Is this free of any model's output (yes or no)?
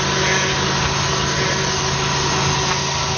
yes